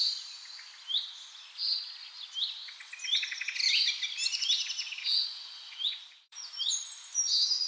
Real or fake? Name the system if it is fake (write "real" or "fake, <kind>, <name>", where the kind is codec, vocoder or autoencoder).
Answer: fake, vocoder, BigVGAN v2